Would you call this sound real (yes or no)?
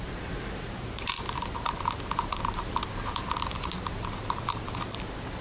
no